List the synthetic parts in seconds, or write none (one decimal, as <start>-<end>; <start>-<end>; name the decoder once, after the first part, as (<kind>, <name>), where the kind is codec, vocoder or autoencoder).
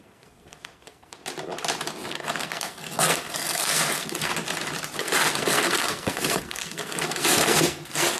0.0-1.2 (codec, SNAC); 2.1-4.3; 5.0-8.2